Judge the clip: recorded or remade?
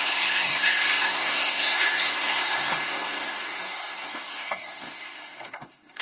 remade